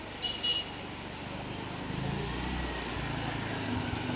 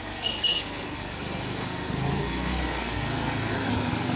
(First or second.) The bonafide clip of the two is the first